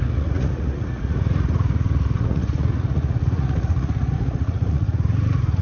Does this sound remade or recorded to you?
remade